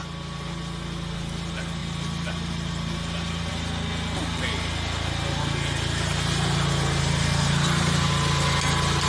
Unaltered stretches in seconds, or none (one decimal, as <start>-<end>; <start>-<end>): 0.0-9.1